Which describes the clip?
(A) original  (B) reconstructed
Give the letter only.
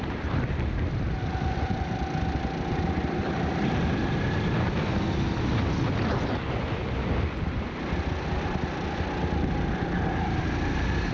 A